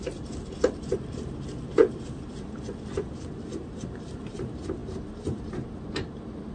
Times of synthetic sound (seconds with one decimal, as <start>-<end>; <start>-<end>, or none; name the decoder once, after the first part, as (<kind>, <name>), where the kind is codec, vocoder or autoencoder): 0.0-6.5 (vocoder, BigVGAN v2)